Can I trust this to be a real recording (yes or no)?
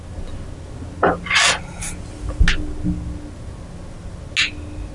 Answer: yes